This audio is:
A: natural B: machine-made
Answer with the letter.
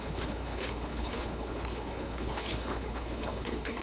B